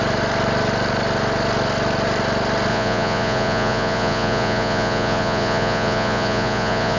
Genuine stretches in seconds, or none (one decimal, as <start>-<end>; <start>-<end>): 0.0-2.7